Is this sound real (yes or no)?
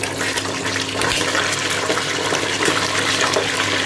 yes